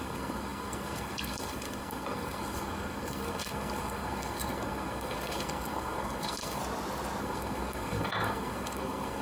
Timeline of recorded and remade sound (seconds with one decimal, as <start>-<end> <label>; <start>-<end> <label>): 0.0-6.6 remade; 6.6-7.2 recorded; 7.2-9.2 remade